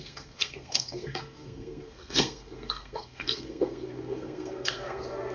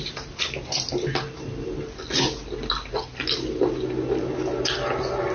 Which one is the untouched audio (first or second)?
second